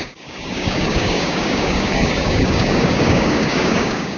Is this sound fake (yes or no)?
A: yes